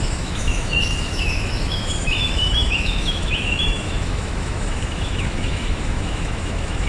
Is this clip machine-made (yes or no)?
yes